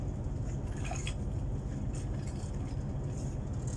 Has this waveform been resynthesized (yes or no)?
no